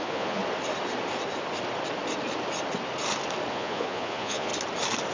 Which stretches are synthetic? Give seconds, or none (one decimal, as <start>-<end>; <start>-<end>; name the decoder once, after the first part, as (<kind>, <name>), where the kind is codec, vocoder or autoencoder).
0.0-0.4 (vocoder, Vocos); 3.5-4.5